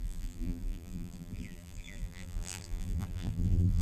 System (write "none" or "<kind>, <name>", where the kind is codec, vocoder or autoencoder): vocoder, BigVGAN v2